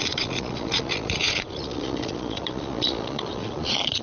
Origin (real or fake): fake